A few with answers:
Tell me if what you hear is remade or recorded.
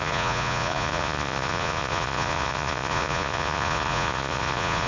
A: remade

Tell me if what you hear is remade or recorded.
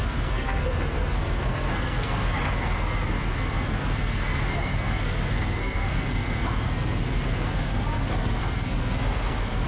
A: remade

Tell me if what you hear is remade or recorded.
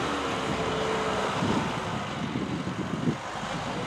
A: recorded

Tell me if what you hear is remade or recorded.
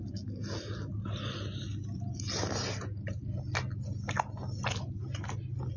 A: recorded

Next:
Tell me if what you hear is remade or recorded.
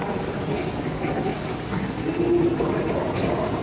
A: recorded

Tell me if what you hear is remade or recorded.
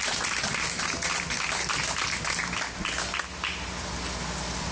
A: recorded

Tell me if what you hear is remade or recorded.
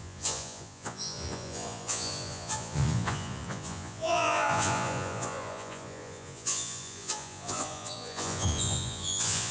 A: remade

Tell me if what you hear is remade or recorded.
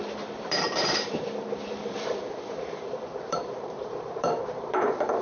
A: remade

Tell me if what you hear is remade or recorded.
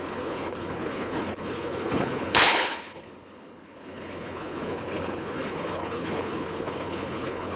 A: remade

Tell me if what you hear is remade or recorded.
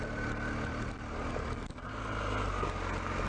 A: recorded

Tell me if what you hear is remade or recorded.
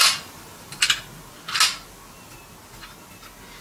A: recorded